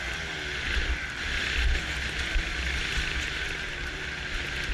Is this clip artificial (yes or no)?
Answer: no